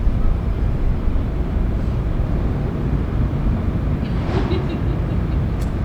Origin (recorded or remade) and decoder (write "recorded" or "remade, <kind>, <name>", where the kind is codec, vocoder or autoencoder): remade, vocoder, BigVGAN v2